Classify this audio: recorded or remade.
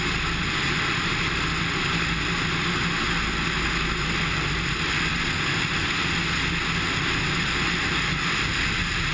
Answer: recorded